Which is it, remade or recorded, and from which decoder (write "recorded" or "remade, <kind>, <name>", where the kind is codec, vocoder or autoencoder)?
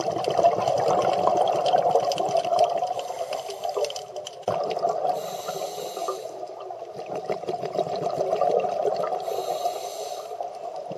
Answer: recorded